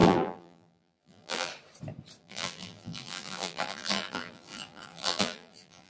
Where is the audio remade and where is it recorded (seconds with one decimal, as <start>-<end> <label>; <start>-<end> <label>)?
0.0-1.5 remade; 1.5-2.2 recorded; 2.2-5.9 remade